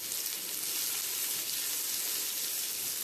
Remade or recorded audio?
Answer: recorded